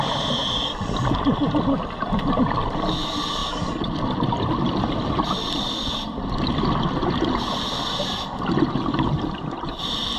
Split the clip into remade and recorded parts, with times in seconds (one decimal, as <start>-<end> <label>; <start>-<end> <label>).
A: 0.0-10.2 recorded